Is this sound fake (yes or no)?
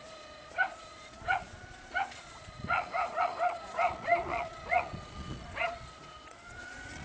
yes